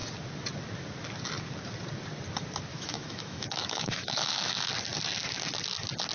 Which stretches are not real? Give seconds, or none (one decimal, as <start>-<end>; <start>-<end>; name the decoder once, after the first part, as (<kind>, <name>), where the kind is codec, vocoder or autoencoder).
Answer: 2.7-4.7 (autoencoder, DAC-VAE)